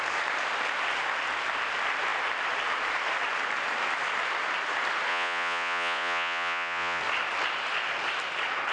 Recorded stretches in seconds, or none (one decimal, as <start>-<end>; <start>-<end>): 0.0-5.1; 7.0-8.7